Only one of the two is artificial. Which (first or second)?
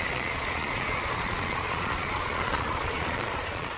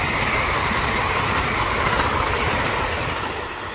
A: first